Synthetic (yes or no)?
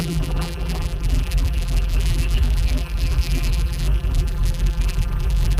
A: yes